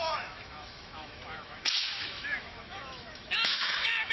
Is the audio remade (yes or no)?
yes